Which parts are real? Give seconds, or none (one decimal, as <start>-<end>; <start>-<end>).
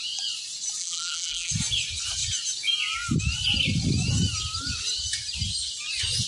0.0-0.8; 1.5-6.3